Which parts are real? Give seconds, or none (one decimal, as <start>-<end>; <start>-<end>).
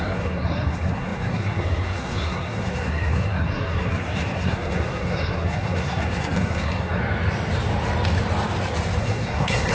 7.0-9.0